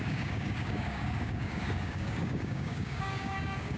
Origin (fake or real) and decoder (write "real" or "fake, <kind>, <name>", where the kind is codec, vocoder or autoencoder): fake, codec, DAC